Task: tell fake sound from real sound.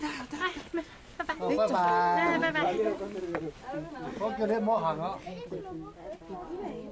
real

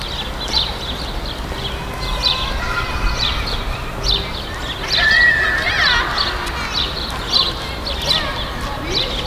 real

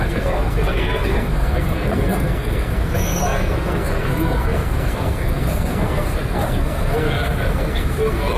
fake